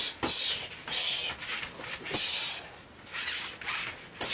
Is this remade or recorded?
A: recorded